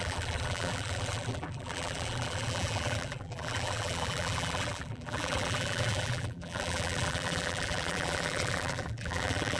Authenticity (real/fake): fake